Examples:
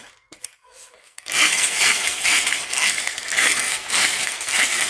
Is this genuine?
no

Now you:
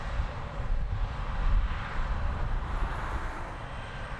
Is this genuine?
no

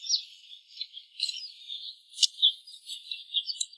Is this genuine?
yes